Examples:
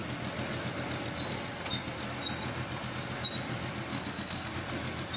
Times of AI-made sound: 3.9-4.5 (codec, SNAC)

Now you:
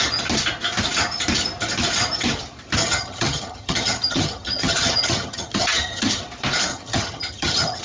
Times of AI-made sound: 2.8-6.2 (vocoder, HiFi-GAN); 6.7-7.8

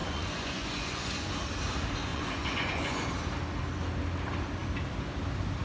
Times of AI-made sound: 0.0-1.3 (vocoder, Vocos); 2.1-3.1

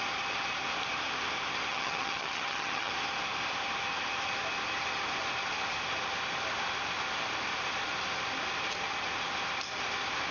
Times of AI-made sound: 1.7-2.9 (vocoder, HiFi-GAN)

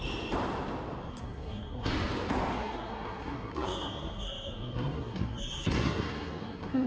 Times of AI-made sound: 1.1-1.9 (codec, SNAC); 2.5-6.9